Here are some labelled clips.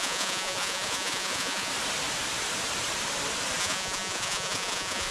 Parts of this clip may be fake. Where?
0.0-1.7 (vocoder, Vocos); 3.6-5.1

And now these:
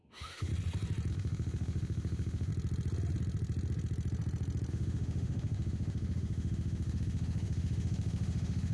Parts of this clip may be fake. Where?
0.0-0.5 (autoencoder, DAC-VAE); 1.1-2.5; 4.7-8.7

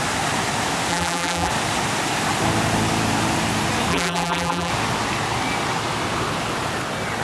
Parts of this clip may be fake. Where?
0.9-1.5 (vocoder, BigVGAN v2); 3.9-4.7